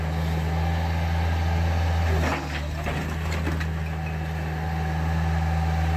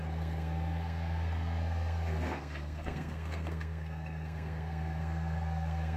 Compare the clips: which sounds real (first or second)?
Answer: first